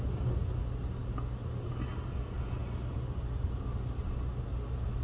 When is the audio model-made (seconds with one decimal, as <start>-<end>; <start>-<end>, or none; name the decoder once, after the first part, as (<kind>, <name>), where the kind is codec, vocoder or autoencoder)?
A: none